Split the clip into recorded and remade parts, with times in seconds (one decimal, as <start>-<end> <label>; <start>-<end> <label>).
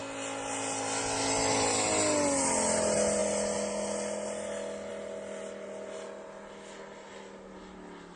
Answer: 0.0-8.2 recorded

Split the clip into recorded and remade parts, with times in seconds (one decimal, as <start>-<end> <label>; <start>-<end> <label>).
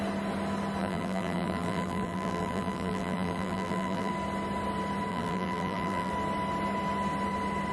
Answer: 0.0-0.8 recorded; 0.8-4.1 remade; 4.1-5.1 recorded; 5.1-6.1 remade; 6.1-7.7 recorded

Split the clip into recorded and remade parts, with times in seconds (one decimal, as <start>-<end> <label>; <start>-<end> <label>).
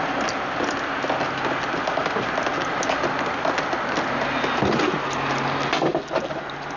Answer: 0.0-6.8 recorded